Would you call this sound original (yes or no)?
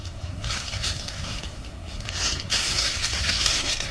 no